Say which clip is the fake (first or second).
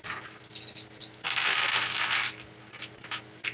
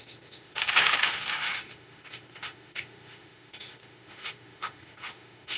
second